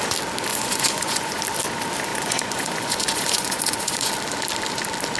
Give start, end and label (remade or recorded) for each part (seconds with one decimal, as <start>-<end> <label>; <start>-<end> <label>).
0.0-0.5 recorded; 0.5-1.4 remade; 1.4-2.1 recorded; 2.1-4.1 remade; 4.1-5.2 recorded